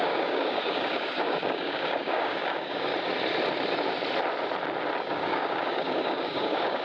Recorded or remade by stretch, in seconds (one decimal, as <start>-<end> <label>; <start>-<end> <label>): 0.0-2.9 remade; 2.9-5.0 recorded; 5.0-6.8 remade